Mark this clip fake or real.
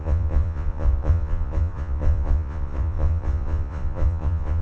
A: fake